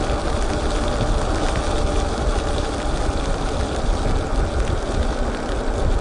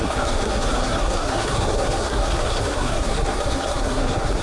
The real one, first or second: first